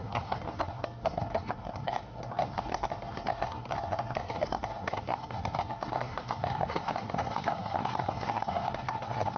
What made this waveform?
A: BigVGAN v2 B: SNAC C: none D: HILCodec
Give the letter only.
B